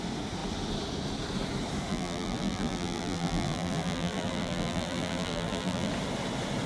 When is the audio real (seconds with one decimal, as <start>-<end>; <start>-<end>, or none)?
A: 0.0-1.9; 5.9-6.7